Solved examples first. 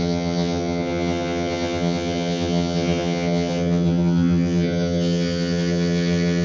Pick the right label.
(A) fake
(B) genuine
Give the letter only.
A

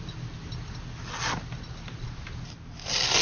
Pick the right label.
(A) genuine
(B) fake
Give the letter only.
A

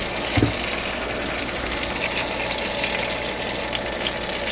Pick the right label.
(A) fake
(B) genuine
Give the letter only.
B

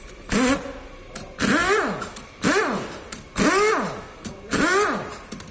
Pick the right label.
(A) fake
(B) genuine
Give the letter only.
B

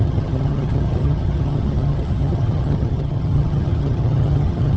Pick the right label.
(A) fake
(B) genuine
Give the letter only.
A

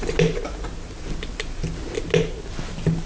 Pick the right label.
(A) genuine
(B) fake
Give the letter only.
A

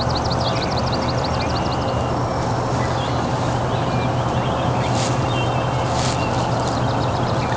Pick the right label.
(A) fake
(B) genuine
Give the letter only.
B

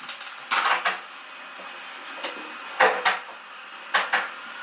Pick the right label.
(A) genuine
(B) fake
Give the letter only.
A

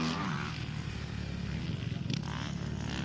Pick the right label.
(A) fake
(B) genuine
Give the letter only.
B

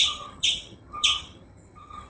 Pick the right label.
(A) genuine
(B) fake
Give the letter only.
B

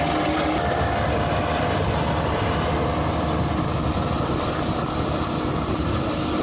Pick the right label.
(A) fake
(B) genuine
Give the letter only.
B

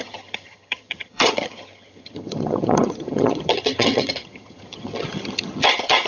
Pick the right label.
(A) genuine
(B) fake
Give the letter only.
B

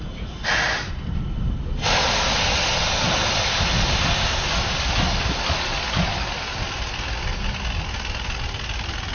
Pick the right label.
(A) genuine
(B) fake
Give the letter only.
A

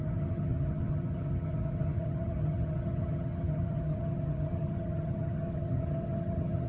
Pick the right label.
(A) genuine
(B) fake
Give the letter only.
B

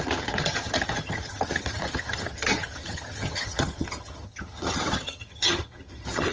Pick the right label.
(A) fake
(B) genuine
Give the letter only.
A